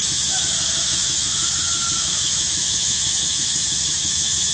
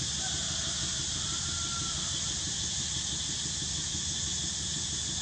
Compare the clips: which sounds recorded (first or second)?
second